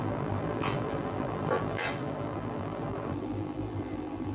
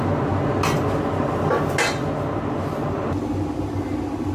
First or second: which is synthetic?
first